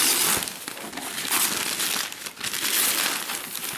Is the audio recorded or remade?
recorded